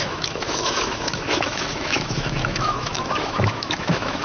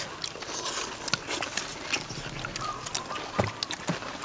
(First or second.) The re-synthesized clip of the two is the first